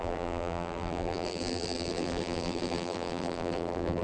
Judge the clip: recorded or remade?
remade